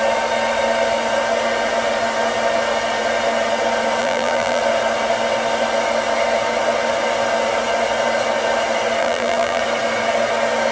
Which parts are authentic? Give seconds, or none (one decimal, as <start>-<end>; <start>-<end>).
0.0-4.0; 4.6-9.0; 9.6-10.7